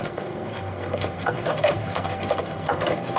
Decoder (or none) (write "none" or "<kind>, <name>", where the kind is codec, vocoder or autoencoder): codec, SNAC